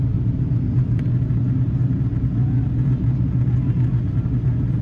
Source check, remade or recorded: recorded